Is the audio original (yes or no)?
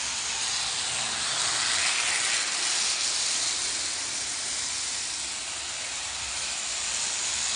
yes